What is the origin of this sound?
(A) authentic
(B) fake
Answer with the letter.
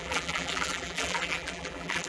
B